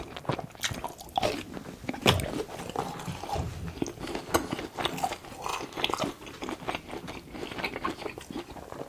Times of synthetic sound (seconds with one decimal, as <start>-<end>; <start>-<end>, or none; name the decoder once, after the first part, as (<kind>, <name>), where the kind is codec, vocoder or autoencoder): none